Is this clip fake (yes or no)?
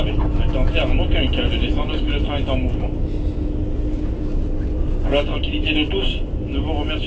no